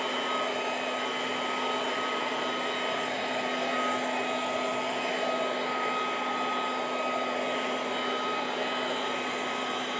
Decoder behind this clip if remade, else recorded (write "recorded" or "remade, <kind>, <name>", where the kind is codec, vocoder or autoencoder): recorded